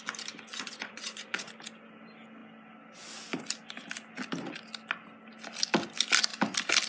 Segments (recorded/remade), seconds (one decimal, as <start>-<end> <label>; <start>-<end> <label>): 0.0-0.5 recorded; 0.5-1.5 remade; 1.5-6.9 recorded